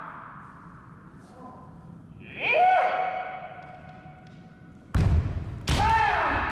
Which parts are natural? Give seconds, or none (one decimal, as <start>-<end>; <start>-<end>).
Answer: 0.0-6.5